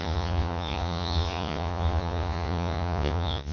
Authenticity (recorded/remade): remade